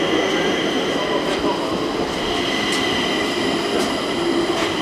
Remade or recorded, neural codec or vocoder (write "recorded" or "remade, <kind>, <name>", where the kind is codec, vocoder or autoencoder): recorded